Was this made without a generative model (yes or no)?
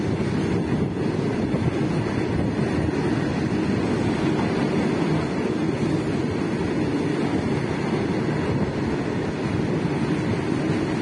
yes